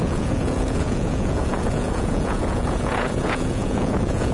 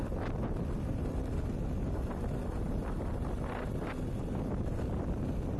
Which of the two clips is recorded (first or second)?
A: second